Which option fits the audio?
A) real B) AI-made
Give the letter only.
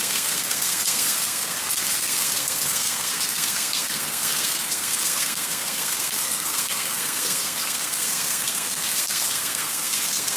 B